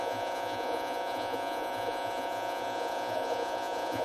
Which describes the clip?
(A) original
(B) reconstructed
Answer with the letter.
B